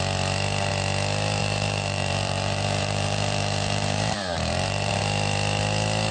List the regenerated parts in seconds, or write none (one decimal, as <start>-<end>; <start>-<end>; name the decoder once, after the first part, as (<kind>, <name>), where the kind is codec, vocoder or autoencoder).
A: 1.4-4.9 (vocoder, BigVGAN v2)